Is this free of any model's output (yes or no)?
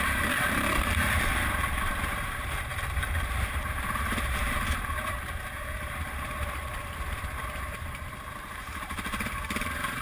no